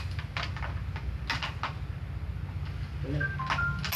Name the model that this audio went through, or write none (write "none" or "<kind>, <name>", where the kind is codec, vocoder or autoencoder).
none